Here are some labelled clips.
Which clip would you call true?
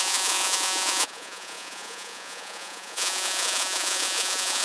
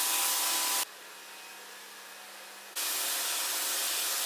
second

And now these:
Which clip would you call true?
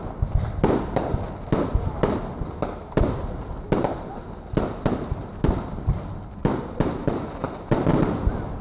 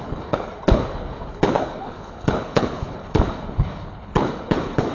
first